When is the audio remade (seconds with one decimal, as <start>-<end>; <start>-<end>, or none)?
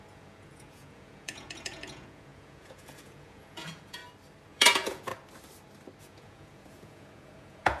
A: 0.0-4.0; 4.5-5.1; 6.0-7.8